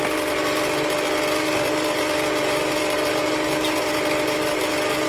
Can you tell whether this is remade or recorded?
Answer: recorded